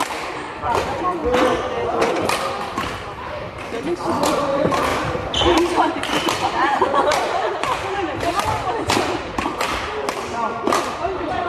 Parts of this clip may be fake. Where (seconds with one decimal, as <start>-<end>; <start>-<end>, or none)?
0.0-1.2; 2.8-4.9; 5.9-11.5

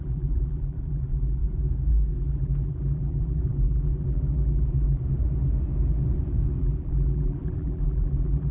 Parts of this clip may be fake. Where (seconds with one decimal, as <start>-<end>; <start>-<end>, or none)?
0.0-1.4; 2.2-5.0; 6.6-8.5